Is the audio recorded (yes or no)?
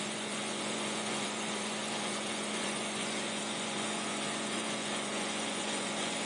no